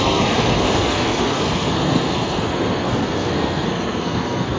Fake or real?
fake